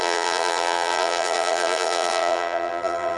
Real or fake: fake